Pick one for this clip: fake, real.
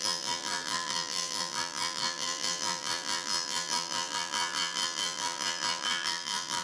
fake